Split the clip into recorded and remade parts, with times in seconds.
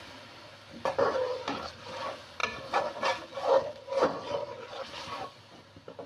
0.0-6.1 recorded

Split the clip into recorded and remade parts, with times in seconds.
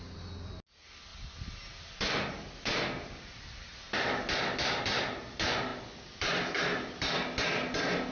0.0-8.1 recorded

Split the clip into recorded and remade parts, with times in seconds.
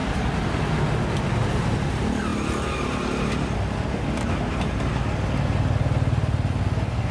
0.0-7.1 recorded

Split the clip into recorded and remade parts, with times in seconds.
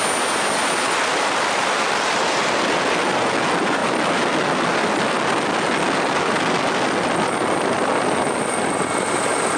0.0-9.6 recorded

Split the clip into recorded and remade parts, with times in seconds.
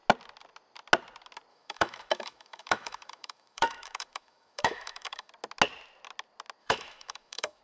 0.0-1.5 recorded; 1.5-5.3 remade; 5.3-6.6 recorded; 6.6-7.6 remade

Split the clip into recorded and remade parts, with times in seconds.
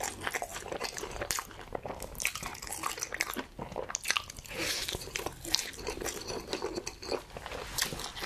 0.0-0.5 recorded; 0.5-2.7 remade; 2.7-4.6 recorded; 4.6-6.4 remade; 6.4-8.3 recorded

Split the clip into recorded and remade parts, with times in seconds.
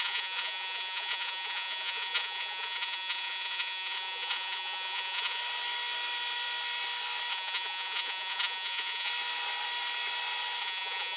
0.0-5.4 remade; 5.4-7.3 recorded; 7.3-9.1 remade; 9.1-10.6 recorded; 10.6-11.2 remade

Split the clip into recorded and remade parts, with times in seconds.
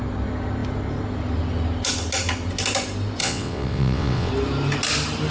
0.0-3.2 recorded; 3.2-4.3 remade; 4.3-5.3 recorded